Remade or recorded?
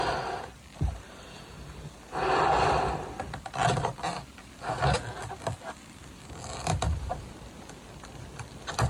recorded